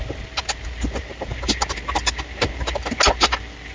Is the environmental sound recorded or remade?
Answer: recorded